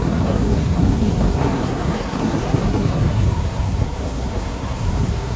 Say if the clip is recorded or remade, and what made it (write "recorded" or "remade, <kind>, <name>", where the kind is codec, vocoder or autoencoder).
remade, codec, SNAC